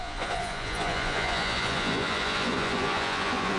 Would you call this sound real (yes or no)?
no